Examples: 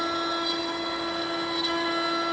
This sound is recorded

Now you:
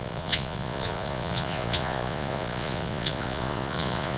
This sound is remade